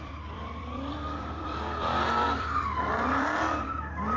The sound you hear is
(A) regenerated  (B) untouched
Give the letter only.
A